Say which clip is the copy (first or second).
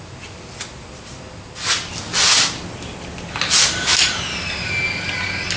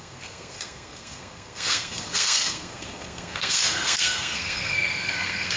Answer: second